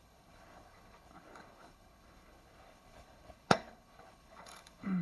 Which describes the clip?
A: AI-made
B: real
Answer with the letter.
A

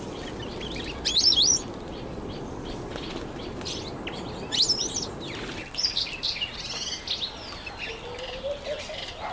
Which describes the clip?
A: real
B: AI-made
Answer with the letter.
A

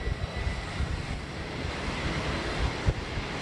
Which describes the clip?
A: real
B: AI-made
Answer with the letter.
A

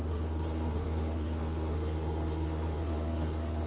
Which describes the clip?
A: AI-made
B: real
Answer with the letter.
A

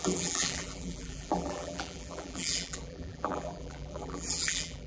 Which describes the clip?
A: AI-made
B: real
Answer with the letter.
A